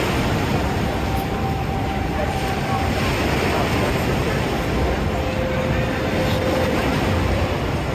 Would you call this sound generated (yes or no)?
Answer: no